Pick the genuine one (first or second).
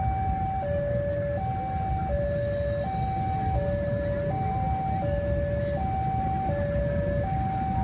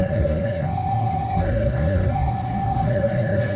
first